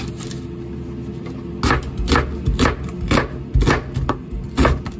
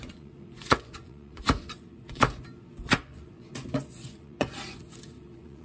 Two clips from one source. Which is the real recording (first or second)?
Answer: first